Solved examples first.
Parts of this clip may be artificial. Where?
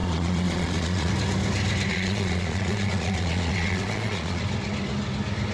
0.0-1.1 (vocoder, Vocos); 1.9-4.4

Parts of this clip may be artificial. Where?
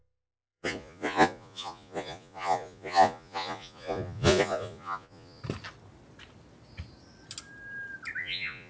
0.0-5.4 (vocoder, Vocos); 8.2-8.7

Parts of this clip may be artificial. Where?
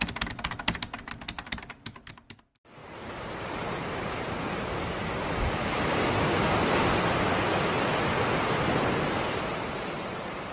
none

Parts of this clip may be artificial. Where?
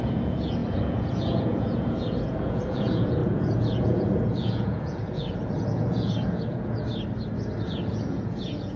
0.0-6.9 (vocoder, Vocos); 7.6-8.8